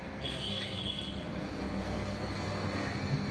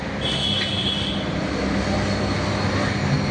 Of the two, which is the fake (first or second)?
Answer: first